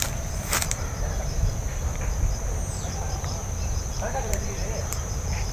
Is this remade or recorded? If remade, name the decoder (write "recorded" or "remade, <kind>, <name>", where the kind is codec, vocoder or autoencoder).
remade, vocoder, BigVGAN v2